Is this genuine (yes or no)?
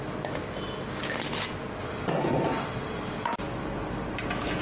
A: yes